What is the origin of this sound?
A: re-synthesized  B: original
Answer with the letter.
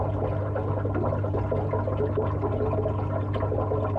B